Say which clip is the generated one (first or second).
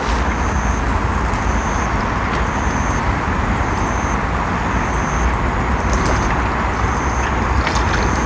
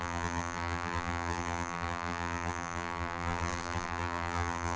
second